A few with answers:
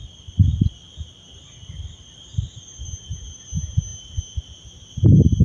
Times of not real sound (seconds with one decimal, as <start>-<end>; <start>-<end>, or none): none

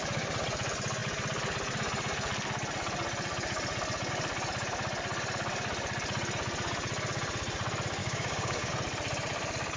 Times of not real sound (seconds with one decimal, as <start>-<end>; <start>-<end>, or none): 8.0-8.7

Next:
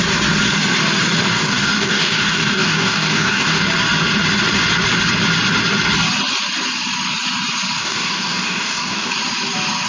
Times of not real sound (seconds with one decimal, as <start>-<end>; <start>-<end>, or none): 1.3-3.6; 7.8-9.1

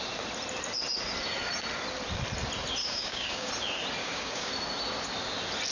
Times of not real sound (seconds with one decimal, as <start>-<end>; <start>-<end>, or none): 2.8-3.5; 4.0-4.5

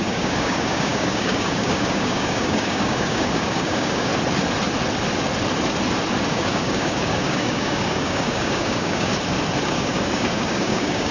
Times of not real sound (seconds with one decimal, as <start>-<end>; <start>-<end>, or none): 0.0-4.1; 6.3-9.1; 9.6-11.1

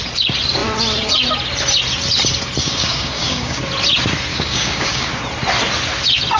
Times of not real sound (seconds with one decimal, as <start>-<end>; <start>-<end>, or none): 2.6-3.6; 4.3-5.2